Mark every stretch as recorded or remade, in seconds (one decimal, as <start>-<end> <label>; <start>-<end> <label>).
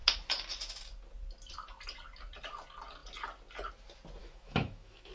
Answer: 0.0-4.2 recorded; 4.2-5.1 remade